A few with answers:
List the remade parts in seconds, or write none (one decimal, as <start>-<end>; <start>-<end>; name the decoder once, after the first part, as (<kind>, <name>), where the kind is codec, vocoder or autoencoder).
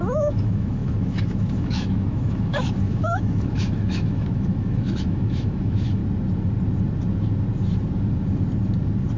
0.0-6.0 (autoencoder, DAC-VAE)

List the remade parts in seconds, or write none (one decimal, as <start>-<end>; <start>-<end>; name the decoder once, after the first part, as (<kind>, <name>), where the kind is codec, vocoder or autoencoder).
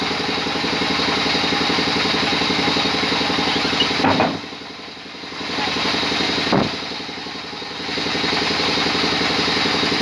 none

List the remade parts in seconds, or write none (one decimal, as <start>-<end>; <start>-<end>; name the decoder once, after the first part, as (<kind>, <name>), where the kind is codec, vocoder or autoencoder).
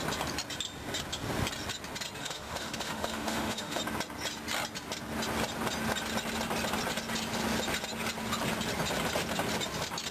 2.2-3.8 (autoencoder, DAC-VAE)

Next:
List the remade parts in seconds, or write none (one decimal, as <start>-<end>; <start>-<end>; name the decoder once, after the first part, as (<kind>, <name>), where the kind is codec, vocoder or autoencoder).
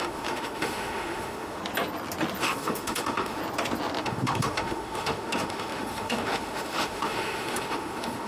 0.0-1.6 (autoencoder, DAC-VAE); 2.4-3.4; 4.0-8.3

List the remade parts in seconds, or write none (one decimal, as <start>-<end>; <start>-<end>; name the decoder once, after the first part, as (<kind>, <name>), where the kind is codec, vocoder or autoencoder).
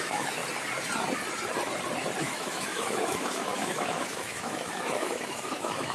0.0-0.4 (autoencoder, DAC-VAE); 2.2-5.9